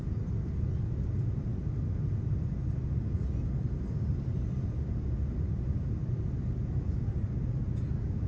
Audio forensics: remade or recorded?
recorded